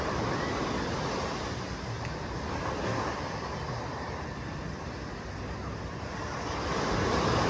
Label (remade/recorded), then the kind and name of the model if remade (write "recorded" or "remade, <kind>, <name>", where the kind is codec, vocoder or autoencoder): recorded